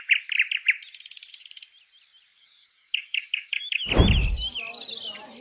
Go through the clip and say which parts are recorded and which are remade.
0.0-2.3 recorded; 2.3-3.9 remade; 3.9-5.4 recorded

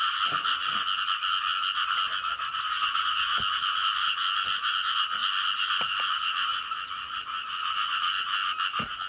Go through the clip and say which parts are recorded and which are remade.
0.0-9.1 recorded

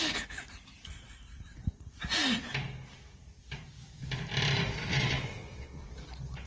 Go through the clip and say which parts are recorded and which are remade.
0.0-4.8 recorded; 4.8-5.8 remade; 5.8-6.5 recorded

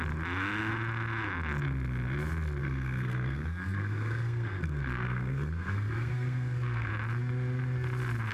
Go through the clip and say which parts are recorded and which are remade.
0.0-2.6 recorded; 2.6-6.9 remade; 6.9-8.3 recorded

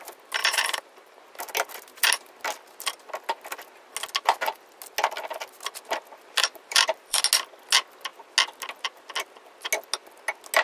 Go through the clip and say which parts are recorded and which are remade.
0.0-0.4 recorded; 0.4-1.2 remade; 1.2-6.4 recorded; 6.4-7.2 remade; 7.2-10.6 recorded

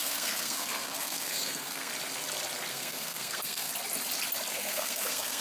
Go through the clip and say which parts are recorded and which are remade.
0.0-1.9 remade; 1.9-2.7 recorded; 2.7-3.7 remade; 3.7-4.5 recorded; 4.5-5.4 remade